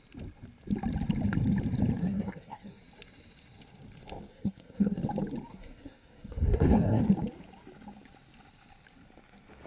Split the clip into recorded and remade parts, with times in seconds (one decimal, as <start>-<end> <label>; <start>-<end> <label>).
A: 0.0-2.0 recorded; 2.0-2.8 remade; 2.8-4.3 recorded; 4.3-5.0 remade; 5.0-5.5 recorded; 5.5-7.0 remade; 7.0-9.7 recorded